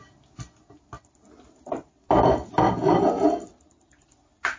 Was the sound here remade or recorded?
recorded